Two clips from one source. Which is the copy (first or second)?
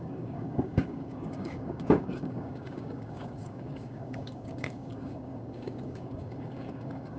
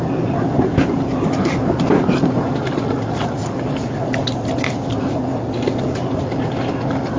first